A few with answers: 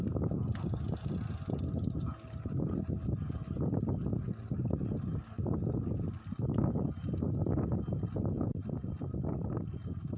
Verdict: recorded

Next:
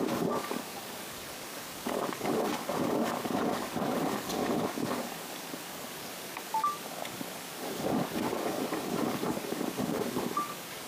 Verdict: remade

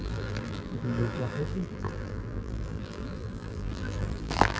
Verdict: remade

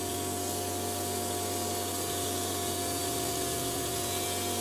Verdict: recorded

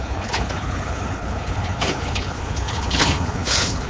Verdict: remade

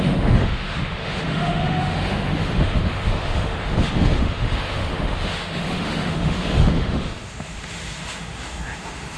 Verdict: remade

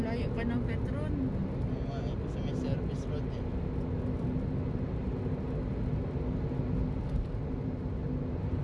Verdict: recorded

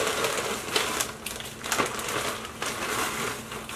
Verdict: recorded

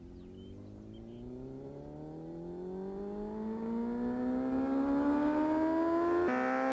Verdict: recorded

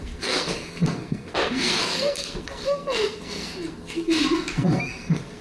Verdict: remade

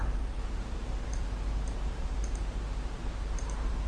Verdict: remade